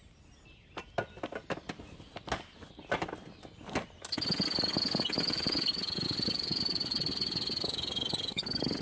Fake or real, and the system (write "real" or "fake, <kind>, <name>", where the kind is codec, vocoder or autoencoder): real